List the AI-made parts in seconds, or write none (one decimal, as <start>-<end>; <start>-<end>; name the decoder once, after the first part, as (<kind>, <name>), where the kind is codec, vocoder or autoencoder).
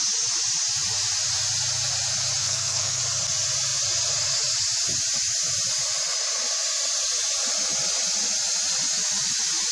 2.4-3.0 (codec, SNAC)